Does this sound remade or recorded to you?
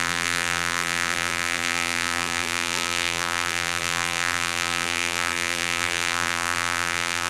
remade